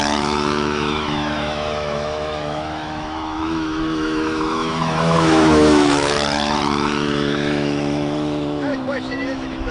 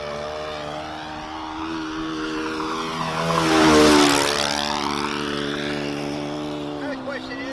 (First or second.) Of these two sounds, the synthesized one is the first